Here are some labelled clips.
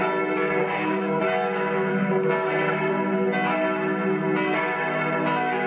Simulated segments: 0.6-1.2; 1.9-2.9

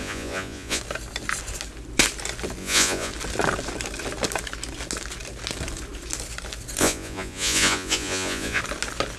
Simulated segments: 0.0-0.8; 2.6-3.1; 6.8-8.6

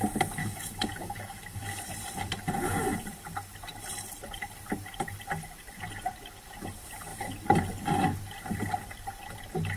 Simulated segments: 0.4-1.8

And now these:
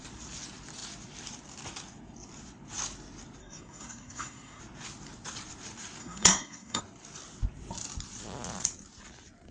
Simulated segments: 3.4-4.6; 6.0-6.8

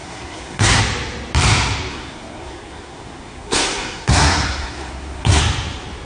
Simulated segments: 0.0-0.8; 1.9-5.4